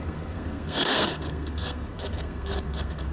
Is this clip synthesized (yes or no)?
yes